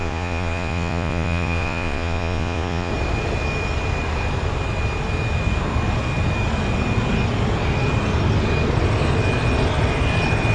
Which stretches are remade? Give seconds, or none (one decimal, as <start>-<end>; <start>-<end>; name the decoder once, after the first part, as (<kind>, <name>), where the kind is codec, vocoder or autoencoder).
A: 0.0-2.9 (vocoder, Vocos)